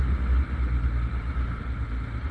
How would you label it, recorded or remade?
recorded